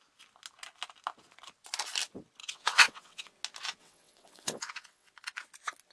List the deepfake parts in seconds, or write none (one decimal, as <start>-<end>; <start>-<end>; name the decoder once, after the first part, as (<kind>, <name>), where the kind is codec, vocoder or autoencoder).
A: 2.4-3.3 (vocoder, WaveNeXt); 3.8-5.1